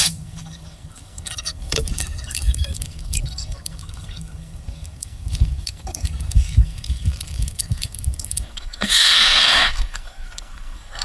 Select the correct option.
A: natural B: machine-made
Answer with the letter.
B